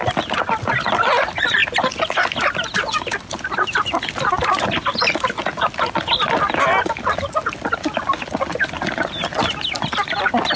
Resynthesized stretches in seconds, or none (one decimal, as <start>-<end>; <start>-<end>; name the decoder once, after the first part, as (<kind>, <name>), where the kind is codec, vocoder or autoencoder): none